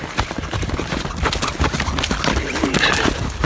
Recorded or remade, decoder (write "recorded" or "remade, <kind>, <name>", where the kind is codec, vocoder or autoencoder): recorded